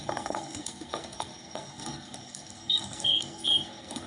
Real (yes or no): no